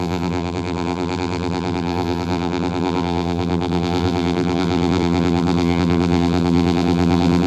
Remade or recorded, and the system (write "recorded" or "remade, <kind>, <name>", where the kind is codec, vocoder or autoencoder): remade, vocoder, BigVGAN v2